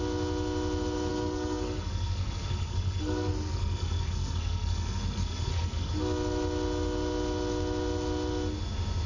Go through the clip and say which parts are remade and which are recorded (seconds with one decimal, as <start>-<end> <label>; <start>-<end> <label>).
0.0-1.1 recorded; 1.1-5.9 remade; 5.9-9.1 recorded